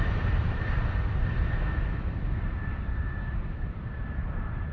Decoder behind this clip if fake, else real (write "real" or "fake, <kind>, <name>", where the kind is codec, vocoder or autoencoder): fake, vocoder, BigVGAN v2